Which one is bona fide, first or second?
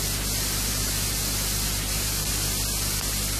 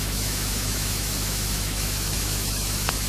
first